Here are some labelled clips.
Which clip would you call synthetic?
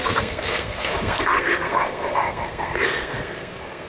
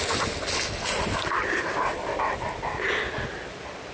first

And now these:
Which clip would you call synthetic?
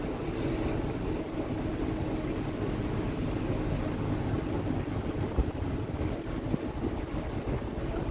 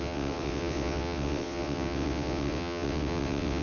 second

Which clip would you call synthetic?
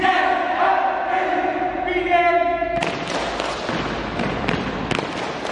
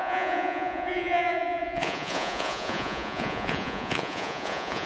second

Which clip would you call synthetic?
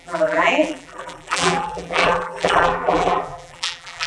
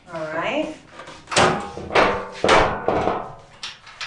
first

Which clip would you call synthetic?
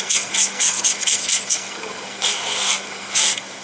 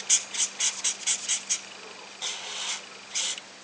first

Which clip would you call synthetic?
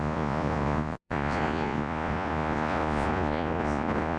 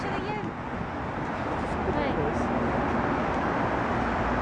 first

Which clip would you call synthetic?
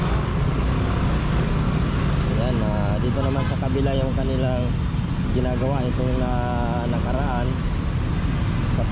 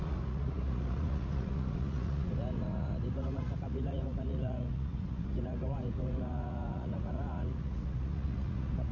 second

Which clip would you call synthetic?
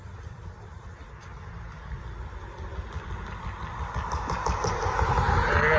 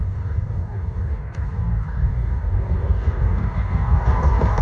second